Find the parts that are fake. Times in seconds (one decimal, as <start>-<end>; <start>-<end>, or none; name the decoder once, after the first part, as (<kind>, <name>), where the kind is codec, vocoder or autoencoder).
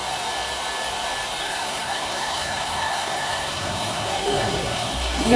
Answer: 1.4-5.4 (codec, SNAC)